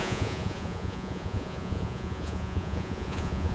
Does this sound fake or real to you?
fake